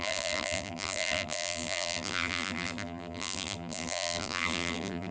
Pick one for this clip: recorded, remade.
remade